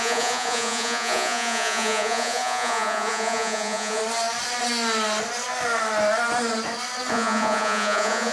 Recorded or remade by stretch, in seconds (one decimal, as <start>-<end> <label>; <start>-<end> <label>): 0.0-4.0 remade; 4.0-7.1 recorded; 7.1-8.3 remade